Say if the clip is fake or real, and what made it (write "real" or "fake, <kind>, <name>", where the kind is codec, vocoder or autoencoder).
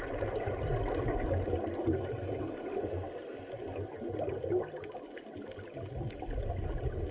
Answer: real